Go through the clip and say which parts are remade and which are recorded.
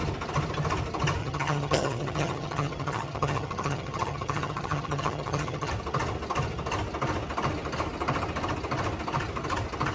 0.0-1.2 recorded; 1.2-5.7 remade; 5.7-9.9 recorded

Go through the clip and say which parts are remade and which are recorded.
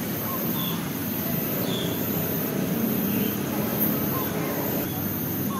0.0-5.6 recorded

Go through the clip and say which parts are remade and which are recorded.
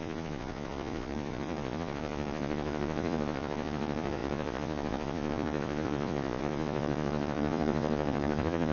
0.0-8.7 remade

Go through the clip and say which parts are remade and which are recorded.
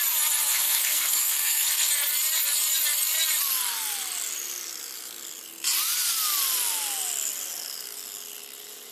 0.0-0.5 recorded; 0.5-1.9 remade; 1.9-8.9 recorded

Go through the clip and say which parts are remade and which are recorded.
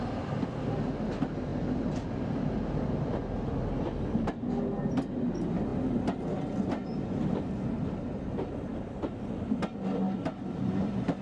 0.0-11.2 recorded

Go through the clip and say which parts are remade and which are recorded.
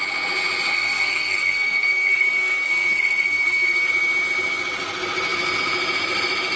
0.0-0.7 recorded; 0.7-3.9 remade; 3.9-6.6 recorded